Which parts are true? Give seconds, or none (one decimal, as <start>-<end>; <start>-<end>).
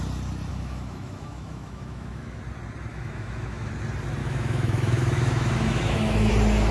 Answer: 0.0-0.5; 2.4-2.9; 3.7-4.2; 6.3-6.7